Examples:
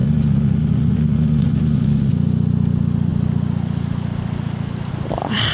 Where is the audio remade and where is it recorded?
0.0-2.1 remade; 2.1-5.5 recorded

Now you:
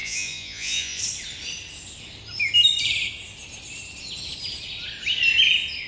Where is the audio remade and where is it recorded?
0.0-1.0 remade; 1.0-5.9 recorded